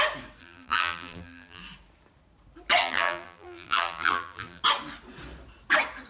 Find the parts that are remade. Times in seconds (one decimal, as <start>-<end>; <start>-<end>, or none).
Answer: 0.4-1.6; 2.8-4.6